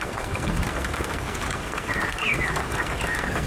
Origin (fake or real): fake